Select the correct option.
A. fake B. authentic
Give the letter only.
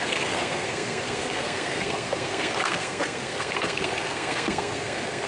A